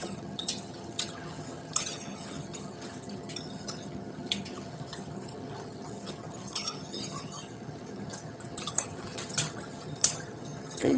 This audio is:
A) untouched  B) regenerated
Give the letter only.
B